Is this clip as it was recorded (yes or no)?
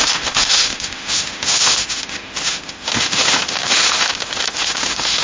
no